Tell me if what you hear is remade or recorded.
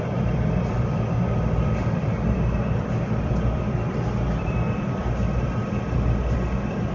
remade